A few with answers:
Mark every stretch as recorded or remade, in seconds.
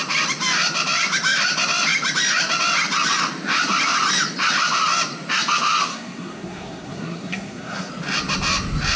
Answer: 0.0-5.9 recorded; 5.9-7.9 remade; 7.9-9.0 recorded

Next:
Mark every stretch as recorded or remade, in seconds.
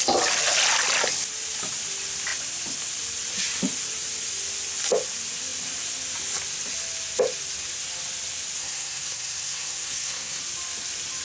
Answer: 0.0-8.6 recorded; 8.6-10.4 remade; 10.4-11.2 recorded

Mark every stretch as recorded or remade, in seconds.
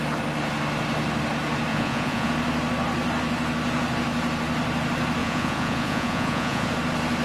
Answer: 0.0-1.7 recorded; 1.7-2.3 remade; 2.3-5.2 recorded; 5.2-6.7 remade; 6.7-7.2 recorded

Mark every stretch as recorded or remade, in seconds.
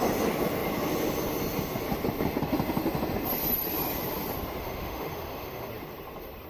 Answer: 0.0-4.6 recorded; 4.6-5.7 remade; 5.7-6.5 recorded